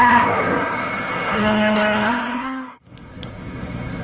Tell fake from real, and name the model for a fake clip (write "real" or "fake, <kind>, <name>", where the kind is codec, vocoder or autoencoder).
fake, codec, SNAC